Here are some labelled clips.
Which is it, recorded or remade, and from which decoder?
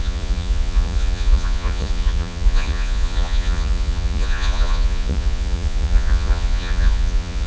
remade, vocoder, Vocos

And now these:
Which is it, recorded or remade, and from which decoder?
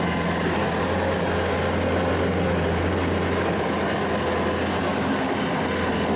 recorded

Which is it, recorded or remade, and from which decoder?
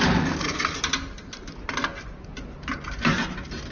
recorded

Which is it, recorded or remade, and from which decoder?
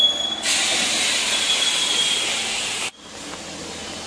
recorded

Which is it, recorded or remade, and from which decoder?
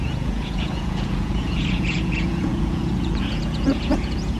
remade, vocoder, Vocos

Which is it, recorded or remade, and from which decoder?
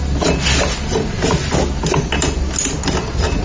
recorded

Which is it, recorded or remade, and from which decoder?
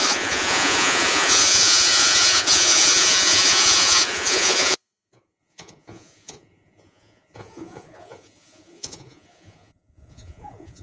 remade, vocoder, Vocos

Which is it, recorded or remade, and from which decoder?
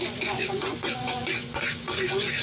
remade, vocoder, Vocos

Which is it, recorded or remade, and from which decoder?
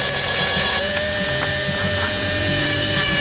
remade, vocoder, Vocos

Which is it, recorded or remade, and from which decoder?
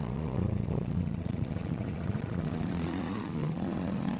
remade, vocoder, Vocos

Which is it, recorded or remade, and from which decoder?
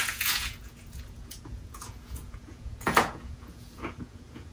remade, vocoder, Vocos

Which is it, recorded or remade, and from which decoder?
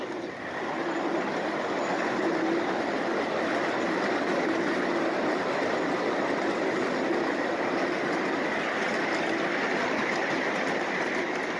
recorded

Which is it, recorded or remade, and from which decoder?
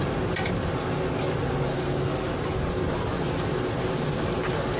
recorded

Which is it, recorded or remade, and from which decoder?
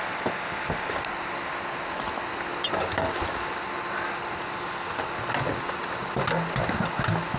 recorded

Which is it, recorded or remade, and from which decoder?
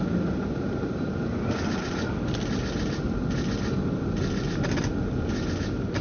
recorded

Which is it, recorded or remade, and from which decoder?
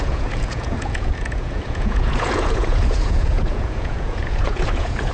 remade, vocoder, Vocos